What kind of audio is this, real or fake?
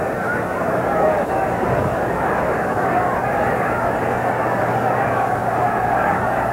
fake